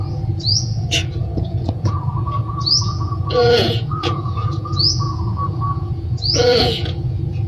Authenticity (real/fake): fake